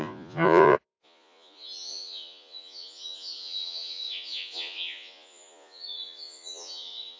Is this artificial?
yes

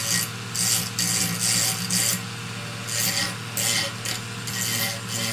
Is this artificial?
no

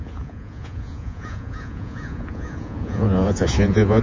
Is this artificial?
yes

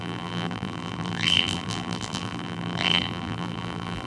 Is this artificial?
yes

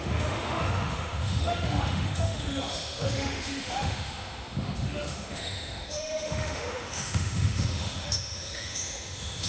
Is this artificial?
yes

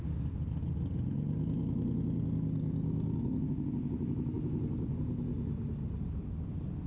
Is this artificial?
no